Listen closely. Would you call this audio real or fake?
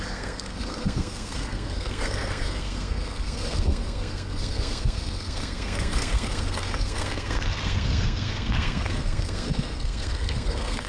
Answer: fake